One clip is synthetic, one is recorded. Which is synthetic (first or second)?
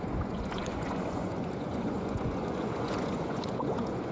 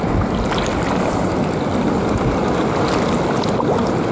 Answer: first